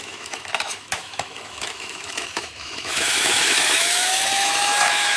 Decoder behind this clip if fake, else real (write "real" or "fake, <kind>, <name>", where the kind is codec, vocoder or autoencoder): fake, autoencoder, DAC-VAE